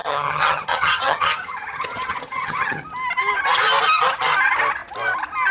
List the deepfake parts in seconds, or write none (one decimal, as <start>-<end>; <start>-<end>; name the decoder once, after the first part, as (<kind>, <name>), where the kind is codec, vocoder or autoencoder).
0.0-2.8 (vocoder, HiFi-GAN)